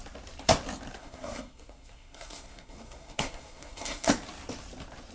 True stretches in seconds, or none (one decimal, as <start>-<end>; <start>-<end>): 0.0-1.0; 4.1-5.1